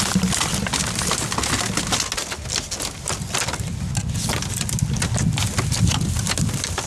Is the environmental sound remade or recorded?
recorded